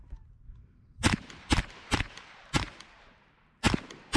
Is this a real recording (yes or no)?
no